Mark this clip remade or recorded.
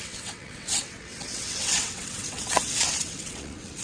remade